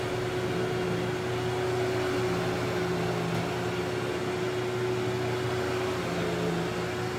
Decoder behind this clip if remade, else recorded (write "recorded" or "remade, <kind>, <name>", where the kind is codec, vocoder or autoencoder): recorded